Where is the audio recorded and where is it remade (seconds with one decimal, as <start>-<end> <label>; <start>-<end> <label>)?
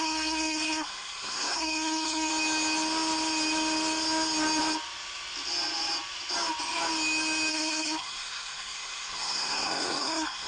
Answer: 0.0-2.3 remade; 2.3-7.5 recorded; 7.5-10.5 remade